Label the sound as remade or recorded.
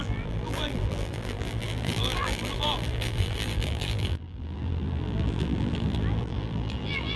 remade